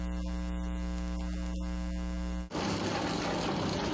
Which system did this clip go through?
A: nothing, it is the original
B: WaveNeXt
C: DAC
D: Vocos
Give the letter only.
A